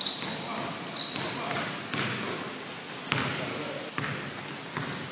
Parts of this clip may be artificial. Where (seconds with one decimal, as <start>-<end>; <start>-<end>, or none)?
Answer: none